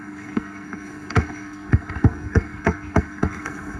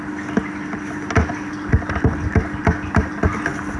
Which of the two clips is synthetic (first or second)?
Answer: first